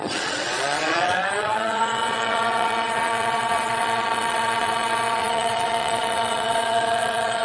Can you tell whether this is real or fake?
fake